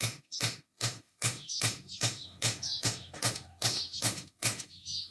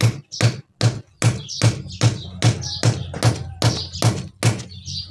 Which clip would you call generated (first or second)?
first